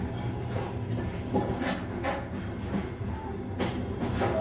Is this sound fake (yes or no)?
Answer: no